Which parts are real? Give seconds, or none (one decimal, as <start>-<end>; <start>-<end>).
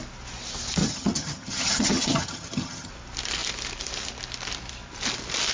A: 0.0-0.8; 2.9-5.5